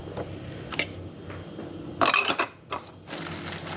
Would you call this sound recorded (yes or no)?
yes